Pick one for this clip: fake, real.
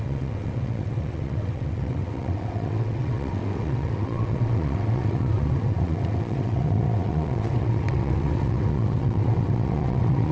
fake